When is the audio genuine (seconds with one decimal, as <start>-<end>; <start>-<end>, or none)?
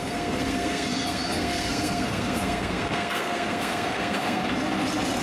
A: 4.4-5.2